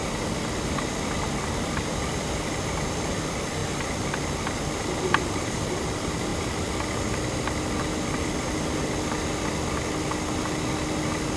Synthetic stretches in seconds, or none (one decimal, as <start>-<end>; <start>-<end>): none